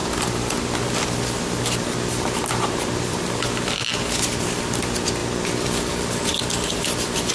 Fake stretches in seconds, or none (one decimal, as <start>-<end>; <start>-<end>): none